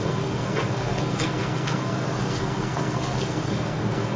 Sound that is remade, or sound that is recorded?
remade